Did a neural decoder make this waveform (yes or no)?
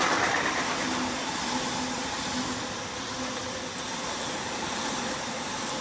no